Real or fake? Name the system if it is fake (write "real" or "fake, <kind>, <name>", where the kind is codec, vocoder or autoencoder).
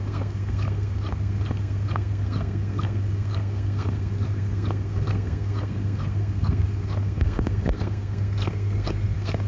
fake, codec, SNAC